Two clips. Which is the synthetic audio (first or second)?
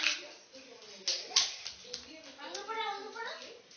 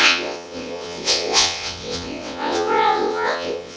second